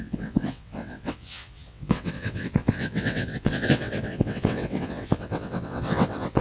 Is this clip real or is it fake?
fake